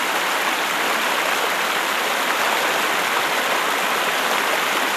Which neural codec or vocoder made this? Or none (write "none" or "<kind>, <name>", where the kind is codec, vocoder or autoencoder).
none